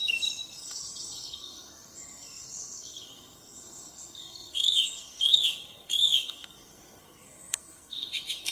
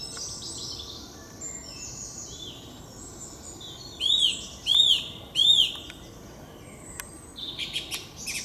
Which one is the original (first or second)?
second